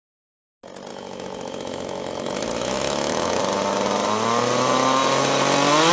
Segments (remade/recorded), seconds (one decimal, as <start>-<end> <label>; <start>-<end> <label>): 0.0-0.9 recorded; 0.9-3.4 remade; 3.4-5.9 recorded